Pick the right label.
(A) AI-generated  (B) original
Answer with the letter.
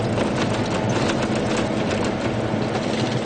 B